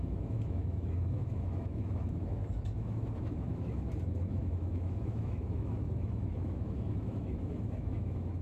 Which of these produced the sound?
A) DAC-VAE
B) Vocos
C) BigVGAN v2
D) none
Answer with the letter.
A